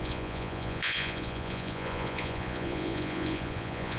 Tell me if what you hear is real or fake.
fake